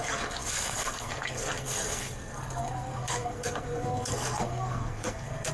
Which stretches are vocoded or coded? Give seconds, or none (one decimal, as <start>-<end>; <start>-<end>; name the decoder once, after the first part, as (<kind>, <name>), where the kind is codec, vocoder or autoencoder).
0.0-5.5 (codec, SNAC)